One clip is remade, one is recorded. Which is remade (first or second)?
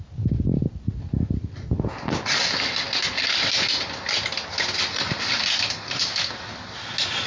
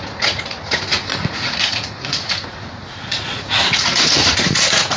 second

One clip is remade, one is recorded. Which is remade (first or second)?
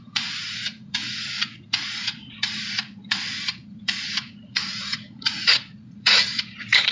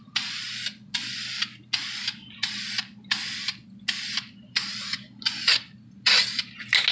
first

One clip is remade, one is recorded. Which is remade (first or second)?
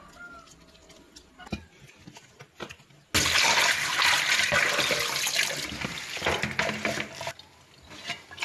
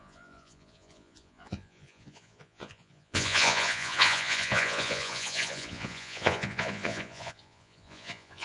second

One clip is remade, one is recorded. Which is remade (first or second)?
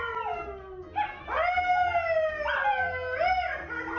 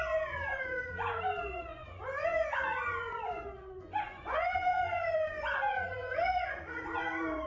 second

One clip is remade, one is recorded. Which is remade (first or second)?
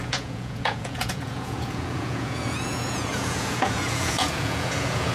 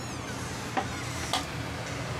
first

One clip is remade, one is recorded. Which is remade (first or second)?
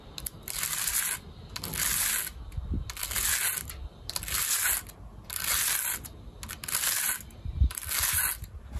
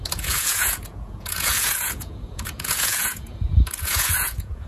second